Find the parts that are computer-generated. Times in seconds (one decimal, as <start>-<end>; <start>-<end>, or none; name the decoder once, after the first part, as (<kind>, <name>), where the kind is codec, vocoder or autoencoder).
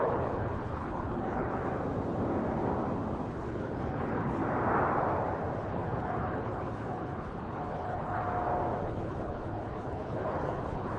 0.0-1.6 (codec, HILCodec); 3.3-4.4; 5.6-8.2; 8.8-11.0